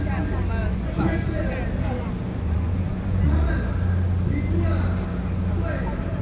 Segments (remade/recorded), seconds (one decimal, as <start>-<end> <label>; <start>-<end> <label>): 0.0-0.6 recorded; 0.6-1.4 remade; 1.4-2.3 recorded; 2.3-3.5 remade; 3.5-6.2 recorded